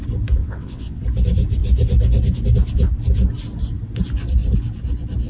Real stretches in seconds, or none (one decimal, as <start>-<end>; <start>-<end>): 0.0-0.4; 1.0-5.3